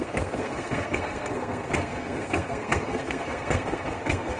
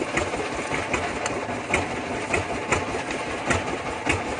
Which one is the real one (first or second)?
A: second